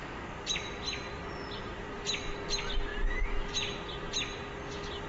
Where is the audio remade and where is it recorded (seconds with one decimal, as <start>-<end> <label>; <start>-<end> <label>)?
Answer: 0.0-1.2 recorded; 1.2-2.0 remade; 2.0-5.1 recorded